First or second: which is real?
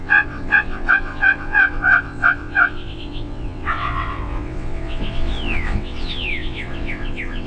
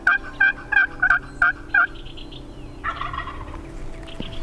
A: second